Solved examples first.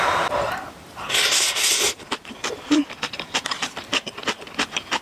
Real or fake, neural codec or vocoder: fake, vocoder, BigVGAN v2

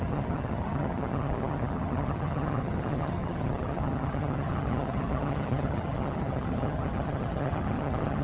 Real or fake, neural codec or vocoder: fake, vocoder, HiFi-GAN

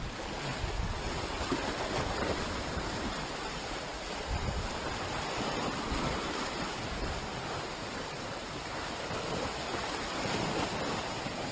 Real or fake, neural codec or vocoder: fake, vocoder, BigVGAN v2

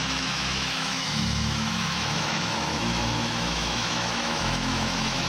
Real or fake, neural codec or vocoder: fake, autoencoder, DAC-VAE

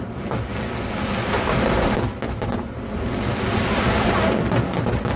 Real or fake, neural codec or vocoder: real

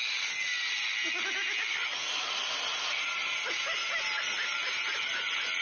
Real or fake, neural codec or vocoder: real